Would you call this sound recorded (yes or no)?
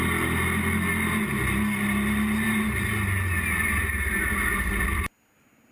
yes